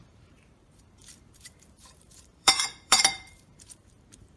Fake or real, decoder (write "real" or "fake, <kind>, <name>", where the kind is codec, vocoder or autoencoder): fake, vocoder, BigVGAN v2